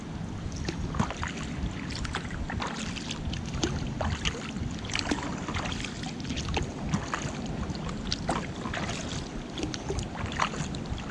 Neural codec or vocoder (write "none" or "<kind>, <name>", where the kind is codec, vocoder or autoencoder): none